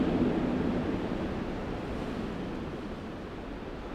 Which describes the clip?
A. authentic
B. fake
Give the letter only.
A